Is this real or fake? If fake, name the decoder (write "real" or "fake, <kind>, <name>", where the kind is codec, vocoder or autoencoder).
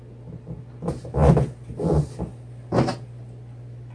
real